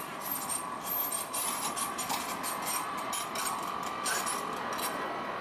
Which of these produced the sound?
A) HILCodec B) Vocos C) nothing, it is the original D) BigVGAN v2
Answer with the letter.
D